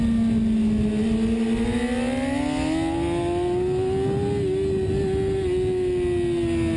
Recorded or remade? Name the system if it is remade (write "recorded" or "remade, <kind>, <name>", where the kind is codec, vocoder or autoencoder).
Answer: recorded